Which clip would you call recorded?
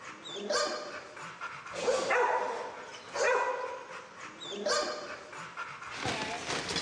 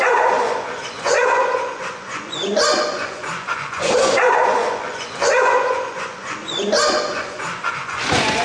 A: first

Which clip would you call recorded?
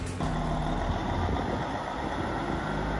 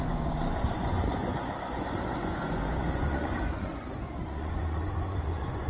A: first